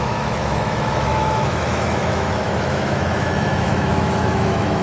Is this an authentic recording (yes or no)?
no